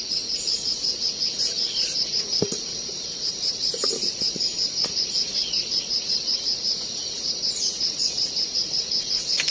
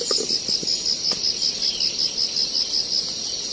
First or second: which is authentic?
second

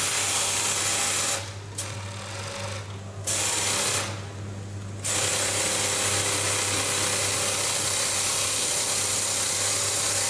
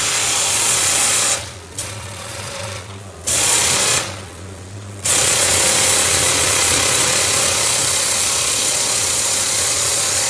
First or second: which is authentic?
first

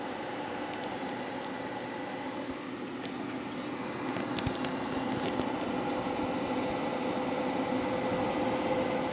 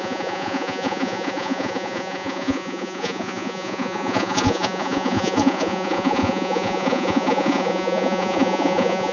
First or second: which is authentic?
first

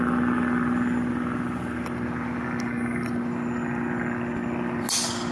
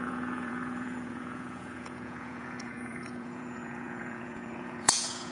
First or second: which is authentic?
first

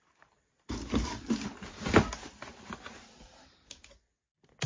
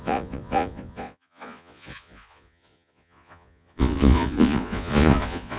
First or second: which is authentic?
first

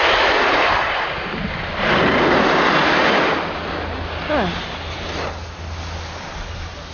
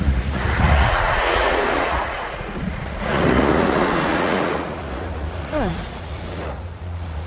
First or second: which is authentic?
first